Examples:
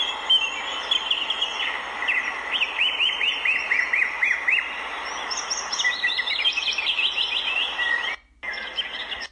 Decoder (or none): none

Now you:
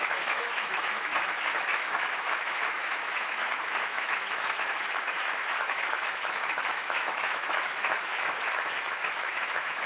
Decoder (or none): autoencoder, DAC-VAE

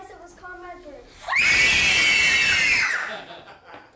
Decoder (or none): none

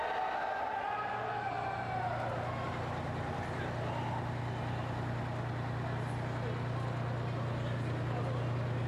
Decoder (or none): none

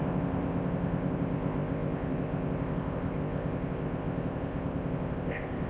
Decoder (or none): codec, ZipCodec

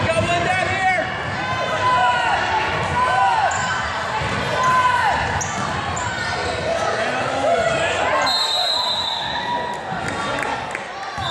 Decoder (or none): none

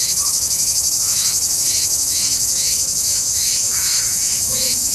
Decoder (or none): autoencoder, DAC-VAE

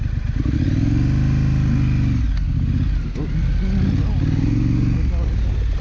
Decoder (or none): none